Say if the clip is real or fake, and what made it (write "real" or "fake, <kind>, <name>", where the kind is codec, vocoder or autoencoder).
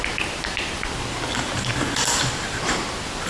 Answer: real